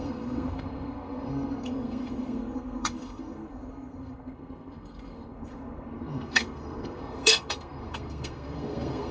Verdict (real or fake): fake